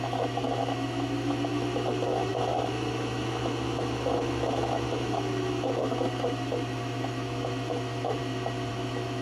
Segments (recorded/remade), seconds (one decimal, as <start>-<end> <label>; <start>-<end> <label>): 0.0-8.2 remade; 8.2-8.7 recorded; 8.7-9.2 remade